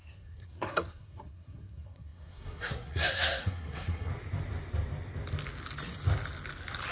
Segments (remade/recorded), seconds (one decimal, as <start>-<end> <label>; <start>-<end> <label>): 0.0-4.1 remade; 4.1-6.9 recorded